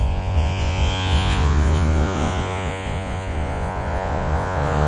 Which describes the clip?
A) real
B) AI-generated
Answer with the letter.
B